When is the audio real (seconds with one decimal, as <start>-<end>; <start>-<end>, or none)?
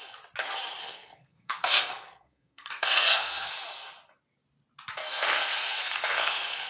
0.0-0.8; 3.5-5.0